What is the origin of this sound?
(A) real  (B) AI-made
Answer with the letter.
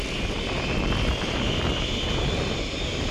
A